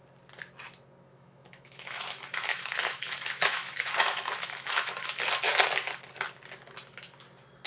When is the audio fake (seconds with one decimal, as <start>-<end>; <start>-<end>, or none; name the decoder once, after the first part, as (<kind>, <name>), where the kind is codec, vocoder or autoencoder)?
1.1-5.2 (autoencoder, DAC-VAE)

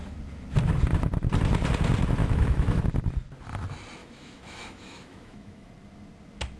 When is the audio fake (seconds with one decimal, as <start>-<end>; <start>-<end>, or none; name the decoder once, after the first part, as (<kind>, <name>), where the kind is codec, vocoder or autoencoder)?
2.2-2.8 (autoencoder, DAC-VAE); 4.0-5.7

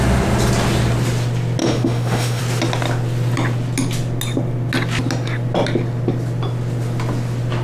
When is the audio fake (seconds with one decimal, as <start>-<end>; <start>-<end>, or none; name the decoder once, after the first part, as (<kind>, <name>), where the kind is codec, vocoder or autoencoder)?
1.6-2.4 (autoencoder, DAC-VAE)

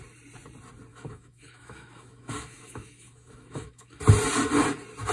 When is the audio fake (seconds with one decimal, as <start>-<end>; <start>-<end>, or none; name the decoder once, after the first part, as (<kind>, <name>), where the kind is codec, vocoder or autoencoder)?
0.9-4.0 (autoencoder, DAC-VAE)

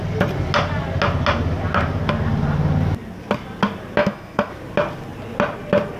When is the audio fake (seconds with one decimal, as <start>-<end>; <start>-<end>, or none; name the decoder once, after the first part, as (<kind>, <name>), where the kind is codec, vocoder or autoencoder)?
4.0-4.5 (autoencoder, DAC-VAE)

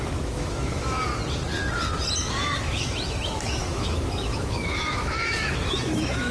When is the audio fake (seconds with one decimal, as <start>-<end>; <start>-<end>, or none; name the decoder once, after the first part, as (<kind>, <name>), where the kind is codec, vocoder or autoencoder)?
0.0-1.1 (autoencoder, DAC-VAE); 2.3-6.3

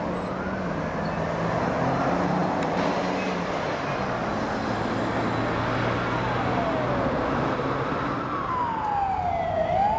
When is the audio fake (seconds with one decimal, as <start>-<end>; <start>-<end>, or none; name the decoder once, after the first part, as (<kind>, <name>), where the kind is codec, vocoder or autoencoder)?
none